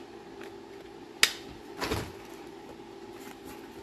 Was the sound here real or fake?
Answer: real